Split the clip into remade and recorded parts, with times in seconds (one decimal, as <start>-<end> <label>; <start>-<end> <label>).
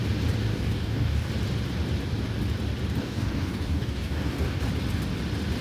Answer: 0.0-0.5 recorded; 0.5-1.3 remade; 1.3-3.0 recorded; 3.0-4.6 remade; 4.6-5.6 recorded